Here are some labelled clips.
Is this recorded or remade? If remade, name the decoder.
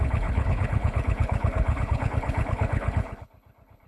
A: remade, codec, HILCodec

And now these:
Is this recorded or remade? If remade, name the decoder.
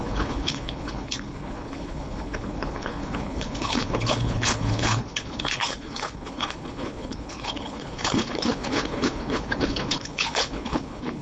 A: remade, codec, HILCodec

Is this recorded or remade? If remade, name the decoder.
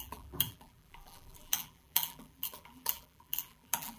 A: remade, vocoder, BigVGAN v2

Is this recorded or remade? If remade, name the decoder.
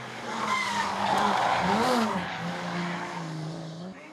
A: remade, codec, DAC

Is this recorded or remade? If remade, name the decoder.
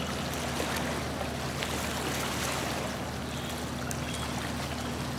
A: recorded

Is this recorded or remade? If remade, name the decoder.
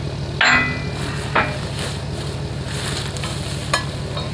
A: recorded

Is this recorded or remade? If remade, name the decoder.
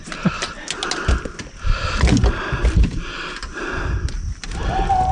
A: recorded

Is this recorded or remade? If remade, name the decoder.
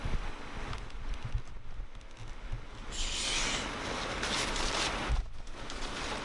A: recorded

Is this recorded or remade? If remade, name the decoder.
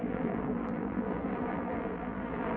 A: remade, vocoder, BigVGAN v2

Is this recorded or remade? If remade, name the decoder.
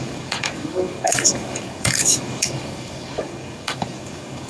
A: remade, codec, DAC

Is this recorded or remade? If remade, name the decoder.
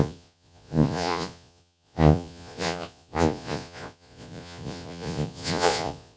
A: remade, vocoder, Vocos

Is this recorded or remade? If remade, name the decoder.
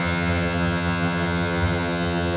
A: remade, vocoder, HiFi-GAN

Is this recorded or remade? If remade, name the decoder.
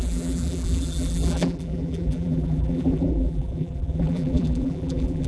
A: remade, vocoder, BigVGAN v2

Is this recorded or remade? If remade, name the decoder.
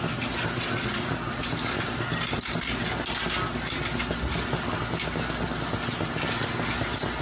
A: recorded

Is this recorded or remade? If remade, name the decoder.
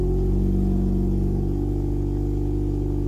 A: recorded